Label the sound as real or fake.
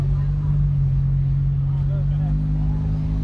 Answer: real